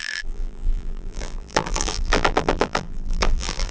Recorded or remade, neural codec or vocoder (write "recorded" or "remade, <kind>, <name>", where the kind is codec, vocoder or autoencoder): remade, vocoder, BigVGAN v2